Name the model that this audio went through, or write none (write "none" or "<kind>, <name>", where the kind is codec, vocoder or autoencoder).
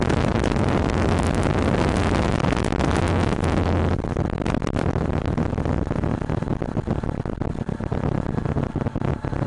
none